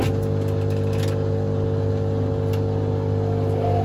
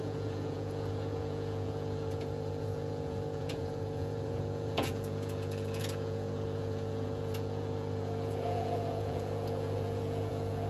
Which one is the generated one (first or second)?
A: second